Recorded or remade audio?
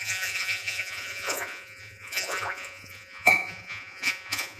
remade